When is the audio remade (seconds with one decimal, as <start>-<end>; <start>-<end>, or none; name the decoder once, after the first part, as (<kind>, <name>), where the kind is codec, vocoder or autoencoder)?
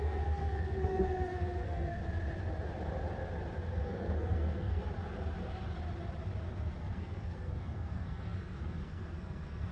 0.0-2.0 (codec, SNAC); 3.8-4.8; 6.8-9.7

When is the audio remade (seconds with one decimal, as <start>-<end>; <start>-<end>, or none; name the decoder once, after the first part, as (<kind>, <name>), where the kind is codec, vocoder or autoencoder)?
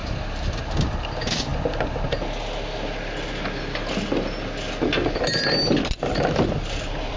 none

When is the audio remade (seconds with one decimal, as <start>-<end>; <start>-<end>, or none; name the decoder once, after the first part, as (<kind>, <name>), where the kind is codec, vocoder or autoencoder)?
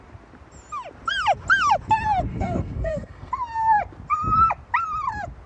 2.3-3.3 (codec, SNAC)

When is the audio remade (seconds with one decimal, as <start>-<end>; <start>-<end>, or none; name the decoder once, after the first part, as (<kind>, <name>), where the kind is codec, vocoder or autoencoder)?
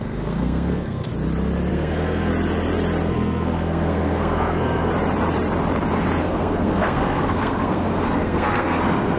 0.0-1.1 (codec, SNAC); 1.7-2.3; 3.1-4.9; 6.2-9.2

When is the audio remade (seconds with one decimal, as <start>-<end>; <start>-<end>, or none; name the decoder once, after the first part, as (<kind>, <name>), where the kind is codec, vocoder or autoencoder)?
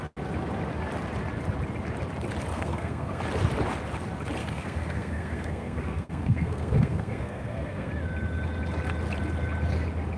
2.5-3.2 (codec, SNAC); 4.4-7.9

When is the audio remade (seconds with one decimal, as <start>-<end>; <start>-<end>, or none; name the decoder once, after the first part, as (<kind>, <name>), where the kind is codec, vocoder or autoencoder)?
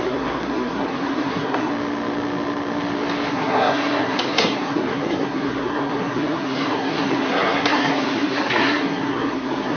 0.0-1.7 (codec, SNAC); 3.3-9.8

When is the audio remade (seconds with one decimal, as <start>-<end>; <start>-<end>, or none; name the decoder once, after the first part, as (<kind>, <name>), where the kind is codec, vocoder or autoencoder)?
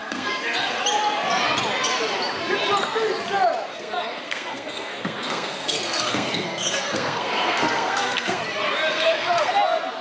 0.0-0.8 (codec, SNAC); 3.7-8.4; 8.9-9.5